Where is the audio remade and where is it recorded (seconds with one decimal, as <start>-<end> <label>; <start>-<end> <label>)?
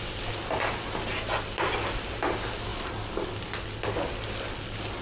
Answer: 0.0-5.0 recorded